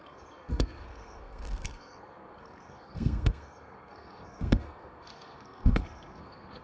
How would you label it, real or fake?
fake